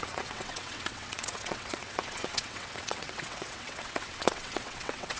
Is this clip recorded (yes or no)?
no